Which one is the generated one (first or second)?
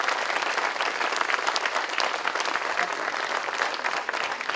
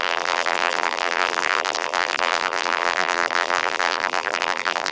second